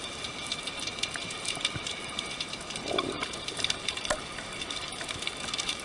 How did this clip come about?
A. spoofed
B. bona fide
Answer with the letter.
A